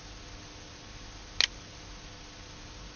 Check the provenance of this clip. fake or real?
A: real